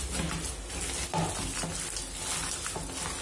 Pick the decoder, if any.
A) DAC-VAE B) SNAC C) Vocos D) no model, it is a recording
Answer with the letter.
D